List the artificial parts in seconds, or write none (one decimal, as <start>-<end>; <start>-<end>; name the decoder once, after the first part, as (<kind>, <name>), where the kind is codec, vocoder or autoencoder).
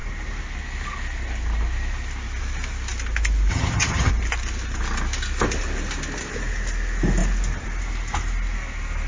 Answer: 3.5-4.1 (vocoder, HiFi-GAN)